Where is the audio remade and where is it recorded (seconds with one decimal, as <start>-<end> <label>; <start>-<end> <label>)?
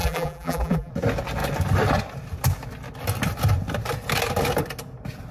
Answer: 0.0-0.9 remade; 0.9-5.3 recorded